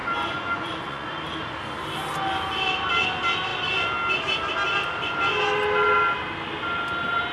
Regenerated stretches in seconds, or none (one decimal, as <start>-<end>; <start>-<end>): 0.0-1.1